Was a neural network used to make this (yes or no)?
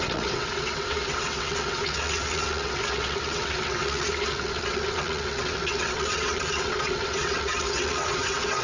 yes